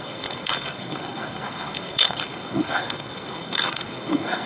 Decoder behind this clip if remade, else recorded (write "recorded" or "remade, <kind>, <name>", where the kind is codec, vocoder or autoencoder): remade, codec, SNAC